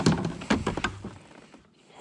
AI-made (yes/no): no